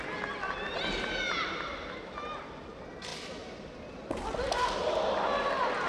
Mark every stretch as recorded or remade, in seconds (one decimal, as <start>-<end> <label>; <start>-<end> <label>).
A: 0.0-5.9 recorded